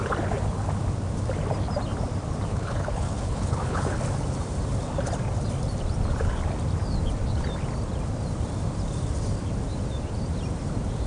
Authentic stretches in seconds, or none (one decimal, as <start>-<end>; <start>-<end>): 0.0-2.5; 4.0-11.1